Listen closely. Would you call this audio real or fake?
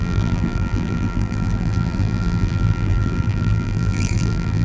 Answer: fake